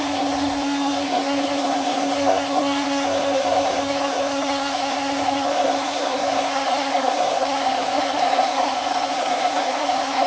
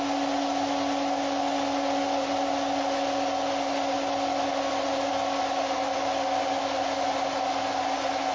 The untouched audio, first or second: second